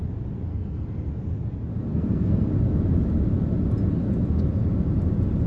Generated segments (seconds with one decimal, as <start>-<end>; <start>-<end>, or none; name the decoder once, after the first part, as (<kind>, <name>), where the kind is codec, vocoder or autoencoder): 0.5-1.1 (codec, SNAC); 1.9-2.5